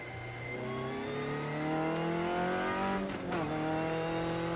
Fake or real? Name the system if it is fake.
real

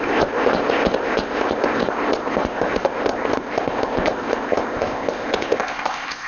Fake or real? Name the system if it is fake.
fake, codec, ZipCodec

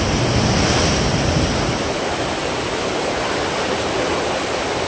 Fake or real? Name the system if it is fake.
real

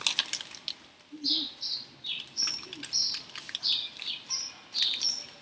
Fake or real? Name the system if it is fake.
real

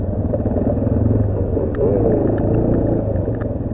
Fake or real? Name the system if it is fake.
real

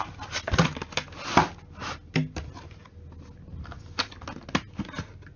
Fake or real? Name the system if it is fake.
real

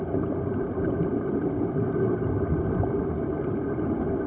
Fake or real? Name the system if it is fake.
real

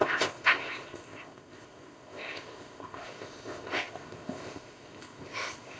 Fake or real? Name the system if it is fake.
fake, codec, ZipCodec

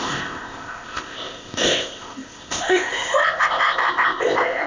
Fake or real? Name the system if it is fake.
fake, codec, ZipCodec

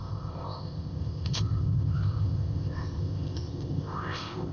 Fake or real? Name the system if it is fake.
fake, codec, ZipCodec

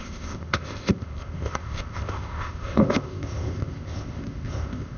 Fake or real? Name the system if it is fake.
fake, codec, ZipCodec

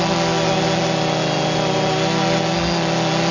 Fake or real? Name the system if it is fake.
real